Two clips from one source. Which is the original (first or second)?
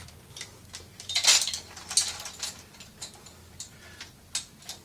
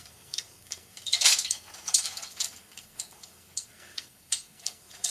first